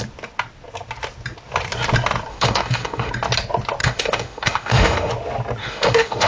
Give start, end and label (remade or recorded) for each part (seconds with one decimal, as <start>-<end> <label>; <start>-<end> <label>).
0.0-2.3 recorded; 2.3-3.1 remade; 3.1-3.8 recorded; 3.8-5.1 remade; 5.1-5.6 recorded; 5.6-6.3 remade